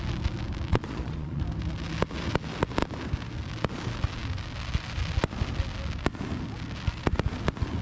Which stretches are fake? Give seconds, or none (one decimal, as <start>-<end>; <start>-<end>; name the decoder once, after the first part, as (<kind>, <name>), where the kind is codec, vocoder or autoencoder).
0.7-1.4 (vocoder, Vocos)